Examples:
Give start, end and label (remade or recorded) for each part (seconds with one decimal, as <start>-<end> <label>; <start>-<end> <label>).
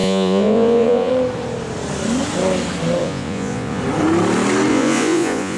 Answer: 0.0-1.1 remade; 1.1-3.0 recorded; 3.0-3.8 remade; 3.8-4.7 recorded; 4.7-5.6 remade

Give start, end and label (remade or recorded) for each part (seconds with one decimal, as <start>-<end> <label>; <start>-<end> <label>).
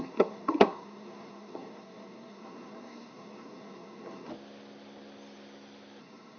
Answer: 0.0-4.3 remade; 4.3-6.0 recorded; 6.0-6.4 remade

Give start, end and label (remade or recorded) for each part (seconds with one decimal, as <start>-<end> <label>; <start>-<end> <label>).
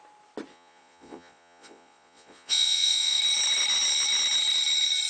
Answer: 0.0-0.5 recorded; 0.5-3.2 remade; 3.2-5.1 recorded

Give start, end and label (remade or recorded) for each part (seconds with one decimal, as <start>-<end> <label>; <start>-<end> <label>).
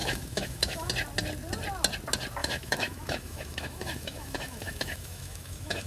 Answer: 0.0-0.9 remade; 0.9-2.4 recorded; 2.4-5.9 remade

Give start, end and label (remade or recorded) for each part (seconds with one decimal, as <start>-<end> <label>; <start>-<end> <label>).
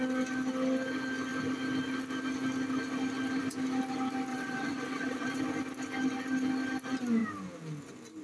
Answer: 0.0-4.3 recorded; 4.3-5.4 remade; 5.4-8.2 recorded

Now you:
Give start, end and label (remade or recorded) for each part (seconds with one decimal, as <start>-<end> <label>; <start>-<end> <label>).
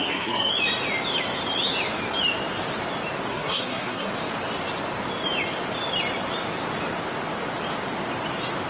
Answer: 0.0-0.5 remade; 0.5-3.3 recorded; 3.3-4.1 remade; 4.1-8.7 recorded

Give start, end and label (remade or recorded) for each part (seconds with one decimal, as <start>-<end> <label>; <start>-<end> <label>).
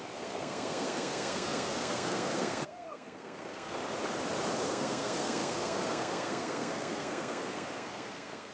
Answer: 0.0-3.8 remade; 3.8-4.7 recorded; 4.7-8.5 remade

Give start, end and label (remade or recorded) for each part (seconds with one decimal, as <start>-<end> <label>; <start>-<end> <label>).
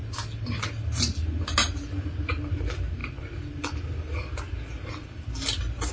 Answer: 0.0-5.9 recorded